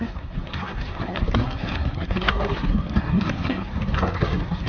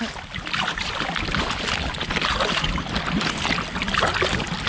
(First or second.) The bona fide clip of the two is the second